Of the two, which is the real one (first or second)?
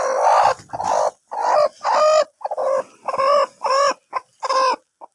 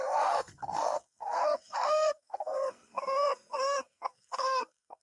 first